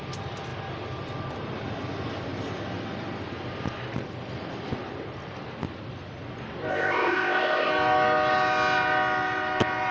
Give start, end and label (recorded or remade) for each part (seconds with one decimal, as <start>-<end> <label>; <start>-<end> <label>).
0.0-6.7 recorded; 6.7-7.7 remade; 7.7-9.9 recorded